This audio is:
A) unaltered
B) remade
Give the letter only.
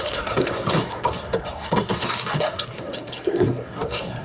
B